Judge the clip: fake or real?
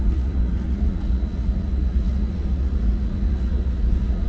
fake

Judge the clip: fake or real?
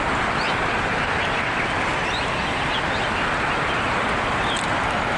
real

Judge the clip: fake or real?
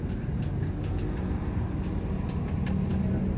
real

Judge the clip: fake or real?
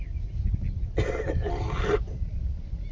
real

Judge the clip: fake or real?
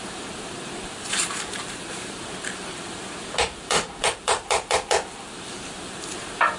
fake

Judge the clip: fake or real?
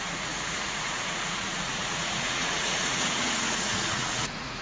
fake